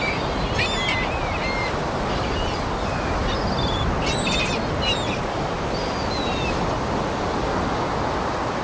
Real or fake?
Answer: real